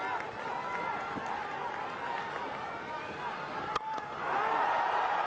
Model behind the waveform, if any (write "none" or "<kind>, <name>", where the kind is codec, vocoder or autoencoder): none